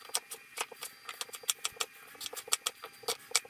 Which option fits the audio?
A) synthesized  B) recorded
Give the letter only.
B